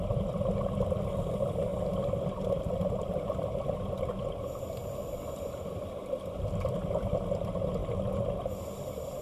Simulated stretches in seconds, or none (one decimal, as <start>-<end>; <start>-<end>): none